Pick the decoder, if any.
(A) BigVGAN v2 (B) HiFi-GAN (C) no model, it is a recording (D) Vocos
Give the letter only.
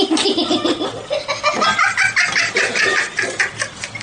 C